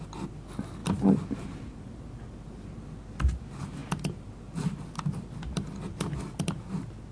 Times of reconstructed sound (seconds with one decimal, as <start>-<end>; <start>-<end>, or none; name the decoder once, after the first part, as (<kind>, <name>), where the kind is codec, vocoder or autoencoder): none